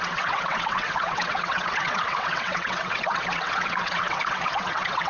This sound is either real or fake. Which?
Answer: fake